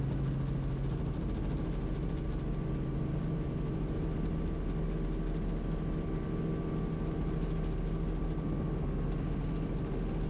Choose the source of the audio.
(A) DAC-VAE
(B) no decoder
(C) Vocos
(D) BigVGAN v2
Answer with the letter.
B